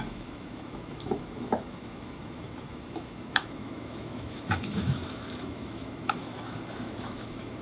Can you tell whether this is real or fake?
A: fake